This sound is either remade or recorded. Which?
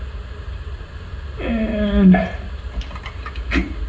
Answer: recorded